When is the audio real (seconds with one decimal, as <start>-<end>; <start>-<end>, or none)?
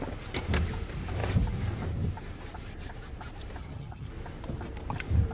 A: 0.0-3.6; 4.1-5.3